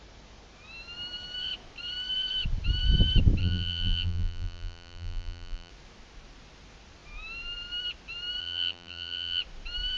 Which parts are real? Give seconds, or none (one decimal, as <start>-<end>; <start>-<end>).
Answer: 0.0-3.4; 5.7-8.4; 9.4-10.0